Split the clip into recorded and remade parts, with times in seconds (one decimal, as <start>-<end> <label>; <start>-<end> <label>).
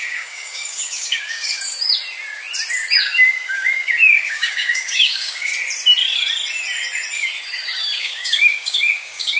0.0-1.5 remade; 1.5-3.0 recorded; 3.0-5.5 remade; 5.5-8.0 recorded; 8.0-9.4 remade